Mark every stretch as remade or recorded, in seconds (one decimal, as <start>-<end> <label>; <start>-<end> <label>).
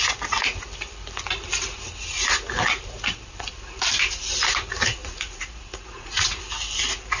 0.0-5.0 recorded; 5.0-6.4 remade; 6.4-7.2 recorded